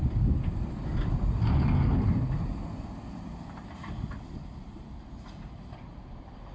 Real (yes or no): yes